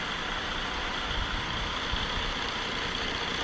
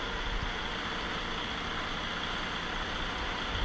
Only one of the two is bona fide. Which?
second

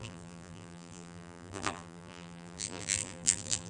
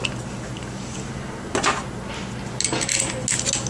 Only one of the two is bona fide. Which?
second